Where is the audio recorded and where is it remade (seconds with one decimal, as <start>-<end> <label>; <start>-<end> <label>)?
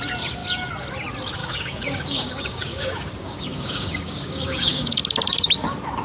0.0-1.4 recorded; 1.4-5.0 remade; 5.0-6.0 recorded